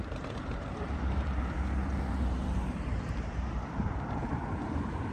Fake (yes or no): yes